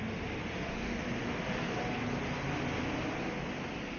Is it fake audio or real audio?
real